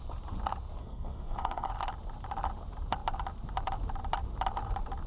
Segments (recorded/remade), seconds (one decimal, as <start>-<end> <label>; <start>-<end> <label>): 0.0-0.8 recorded; 0.8-1.7 remade; 1.7-5.1 recorded